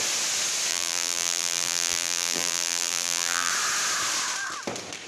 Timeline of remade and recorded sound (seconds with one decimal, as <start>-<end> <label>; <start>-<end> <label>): 0.0-0.7 recorded; 0.7-3.5 remade; 3.5-5.1 recorded